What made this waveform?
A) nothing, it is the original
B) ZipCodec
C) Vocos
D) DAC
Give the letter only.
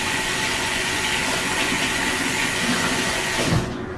C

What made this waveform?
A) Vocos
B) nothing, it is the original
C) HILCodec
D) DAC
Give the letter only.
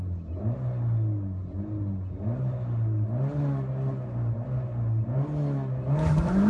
B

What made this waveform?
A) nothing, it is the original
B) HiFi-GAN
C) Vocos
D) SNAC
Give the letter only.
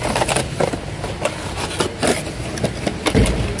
A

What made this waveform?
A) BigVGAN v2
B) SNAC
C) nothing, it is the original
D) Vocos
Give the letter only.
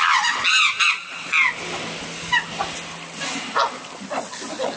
C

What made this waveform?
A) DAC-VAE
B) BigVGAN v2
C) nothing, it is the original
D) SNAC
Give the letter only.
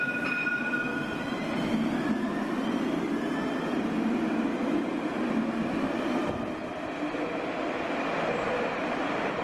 C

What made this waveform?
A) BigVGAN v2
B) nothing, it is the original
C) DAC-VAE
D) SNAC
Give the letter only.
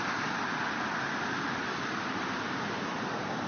B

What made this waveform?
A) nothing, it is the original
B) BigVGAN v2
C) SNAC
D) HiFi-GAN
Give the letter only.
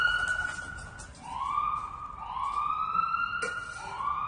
A